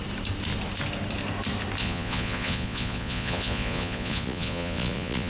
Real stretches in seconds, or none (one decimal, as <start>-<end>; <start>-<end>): 0.0-1.8